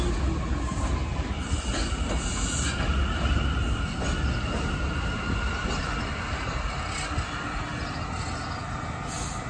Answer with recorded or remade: recorded